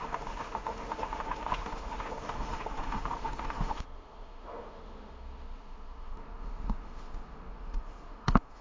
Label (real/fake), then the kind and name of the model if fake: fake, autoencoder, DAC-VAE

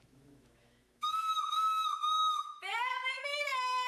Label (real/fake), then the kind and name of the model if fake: fake, autoencoder, DAC-VAE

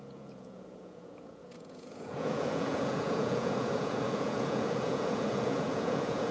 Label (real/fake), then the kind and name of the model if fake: fake, vocoder, Vocos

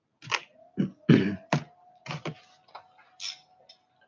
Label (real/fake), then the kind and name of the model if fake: real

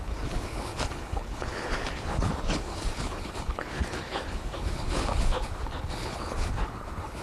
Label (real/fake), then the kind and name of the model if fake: fake, codec, HILCodec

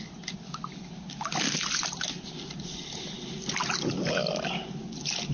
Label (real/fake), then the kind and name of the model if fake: real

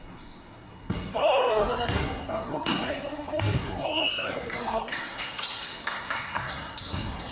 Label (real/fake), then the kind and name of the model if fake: fake, codec, SNAC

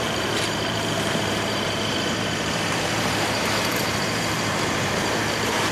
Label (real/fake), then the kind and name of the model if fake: fake, vocoder, BigVGAN v2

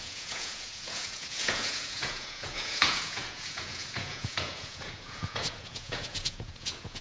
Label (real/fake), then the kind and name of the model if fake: fake, vocoder, Vocos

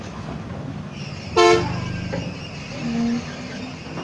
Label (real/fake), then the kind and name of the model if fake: real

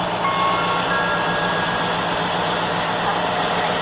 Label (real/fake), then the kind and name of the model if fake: real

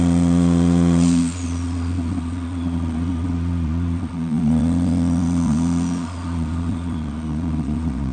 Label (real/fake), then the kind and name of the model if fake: fake, vocoder, Vocos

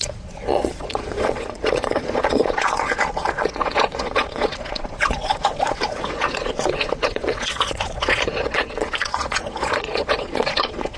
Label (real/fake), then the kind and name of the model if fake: fake, vocoder, Vocos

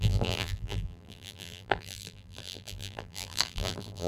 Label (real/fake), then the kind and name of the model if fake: fake, vocoder, BigVGAN v2